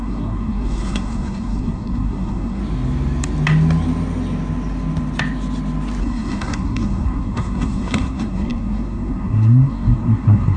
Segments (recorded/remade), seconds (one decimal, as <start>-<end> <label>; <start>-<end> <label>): 0.0-2.6 remade; 2.6-6.0 recorded; 6.0-10.6 remade